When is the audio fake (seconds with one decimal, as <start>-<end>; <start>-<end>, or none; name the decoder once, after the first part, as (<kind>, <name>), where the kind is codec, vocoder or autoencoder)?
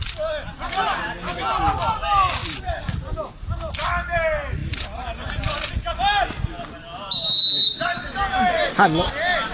2.4-3.7 (vocoder, BigVGAN v2); 4.6-5.7